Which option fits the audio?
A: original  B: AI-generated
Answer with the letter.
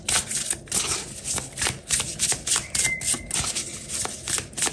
A